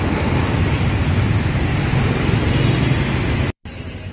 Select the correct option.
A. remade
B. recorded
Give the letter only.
A